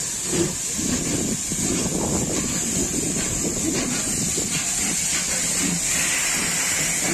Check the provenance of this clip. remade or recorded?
recorded